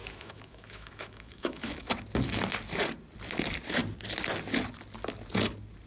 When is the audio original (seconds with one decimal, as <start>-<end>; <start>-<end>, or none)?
1.9-5.9